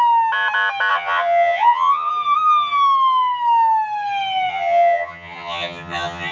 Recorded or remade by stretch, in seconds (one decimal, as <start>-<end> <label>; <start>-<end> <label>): 0.0-0.9 recorded; 0.9-2.1 remade; 2.1-4.5 recorded; 4.5-6.3 remade

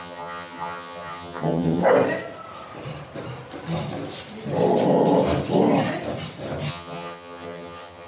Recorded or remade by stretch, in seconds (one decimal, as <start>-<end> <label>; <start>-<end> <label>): 0.0-1.8 remade; 1.8-6.7 recorded; 6.7-8.1 remade

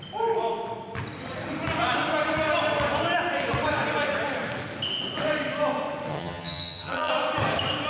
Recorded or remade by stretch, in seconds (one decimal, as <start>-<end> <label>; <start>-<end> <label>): 0.0-6.1 recorded; 6.1-7.1 remade; 7.1-7.9 recorded

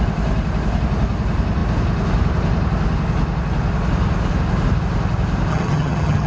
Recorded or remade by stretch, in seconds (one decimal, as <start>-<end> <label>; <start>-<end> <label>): 0.0-5.5 recorded; 5.5-6.3 remade

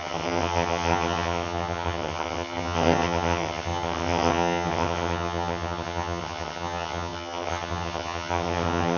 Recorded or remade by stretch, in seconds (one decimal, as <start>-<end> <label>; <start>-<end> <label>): 0.0-9.0 remade

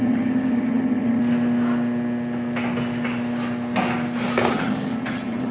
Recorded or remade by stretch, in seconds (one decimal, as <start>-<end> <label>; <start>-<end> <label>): 0.0-1.2 remade; 1.2-4.5 recorded; 4.5-5.5 remade

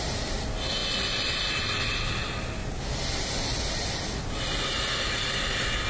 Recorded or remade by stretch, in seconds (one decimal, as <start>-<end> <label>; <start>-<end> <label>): 0.0-5.9 recorded